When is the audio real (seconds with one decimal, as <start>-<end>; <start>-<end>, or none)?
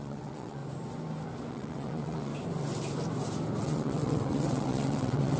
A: 0.6-1.5; 2.3-3.6